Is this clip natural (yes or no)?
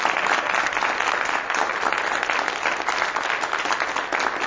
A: yes